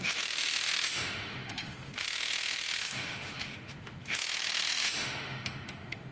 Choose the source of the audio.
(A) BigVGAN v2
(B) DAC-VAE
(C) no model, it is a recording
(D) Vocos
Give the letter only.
B